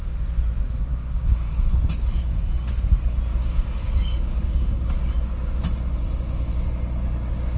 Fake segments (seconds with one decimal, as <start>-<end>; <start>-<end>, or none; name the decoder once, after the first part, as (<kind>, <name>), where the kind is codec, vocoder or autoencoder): 0.9-2.3 (codec, DAC); 3.3-4.9